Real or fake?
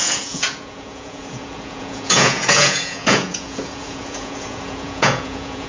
fake